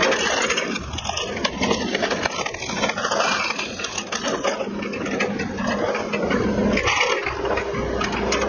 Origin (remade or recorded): recorded